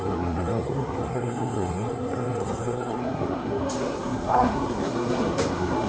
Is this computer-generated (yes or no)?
yes